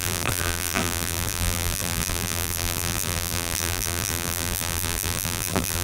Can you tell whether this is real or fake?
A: fake